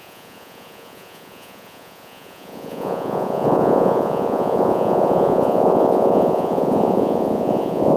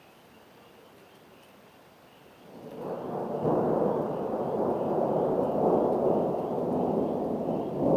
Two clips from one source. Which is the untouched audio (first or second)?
second